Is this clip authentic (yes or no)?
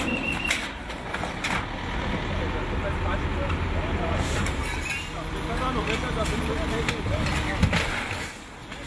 yes